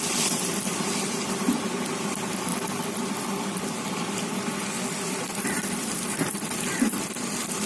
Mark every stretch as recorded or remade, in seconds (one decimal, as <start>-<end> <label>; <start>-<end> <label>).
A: 0.0-7.7 recorded